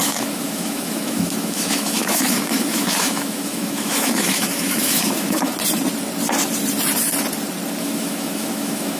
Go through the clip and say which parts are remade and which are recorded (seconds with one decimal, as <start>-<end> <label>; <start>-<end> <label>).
0.0-5.5 remade; 5.5-7.8 recorded; 7.8-9.0 remade